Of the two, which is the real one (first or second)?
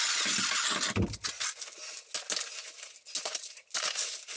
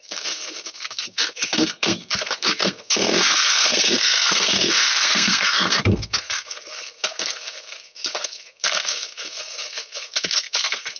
first